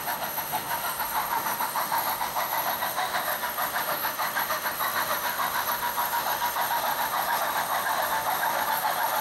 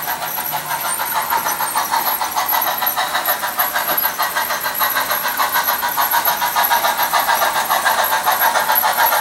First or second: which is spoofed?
first